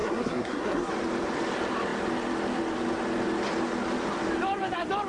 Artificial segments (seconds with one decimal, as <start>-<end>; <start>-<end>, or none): 0.0-0.9